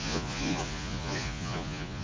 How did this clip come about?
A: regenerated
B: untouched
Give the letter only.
A